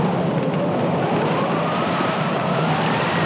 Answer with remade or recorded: recorded